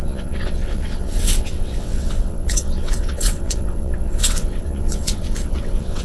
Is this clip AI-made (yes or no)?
yes